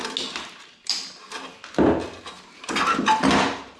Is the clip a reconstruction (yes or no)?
no